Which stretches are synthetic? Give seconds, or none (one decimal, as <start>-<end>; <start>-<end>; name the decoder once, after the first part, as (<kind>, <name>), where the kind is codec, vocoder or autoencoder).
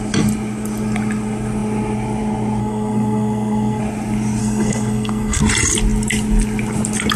2.6-3.8 (codec, SNAC); 4.4-5.4